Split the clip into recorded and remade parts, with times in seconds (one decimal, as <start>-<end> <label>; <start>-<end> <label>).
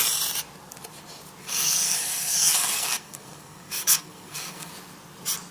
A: 0.0-1.4 recorded; 1.4-4.7 remade; 4.7-5.5 recorded